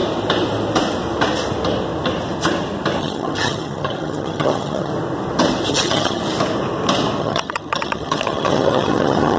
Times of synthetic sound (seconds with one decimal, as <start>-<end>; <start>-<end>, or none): 3.0-4.9; 5.7-6.2; 7.2-9.4